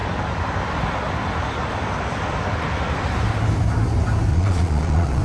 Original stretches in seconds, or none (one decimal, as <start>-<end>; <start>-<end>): 0.0-4.3